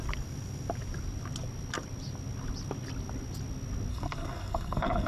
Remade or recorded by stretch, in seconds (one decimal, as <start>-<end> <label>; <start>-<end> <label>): 0.0-3.9 recorded; 3.9-5.1 remade